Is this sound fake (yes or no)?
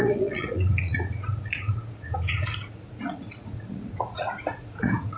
yes